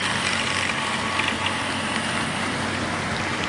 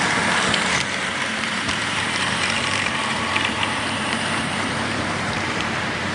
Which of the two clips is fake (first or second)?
second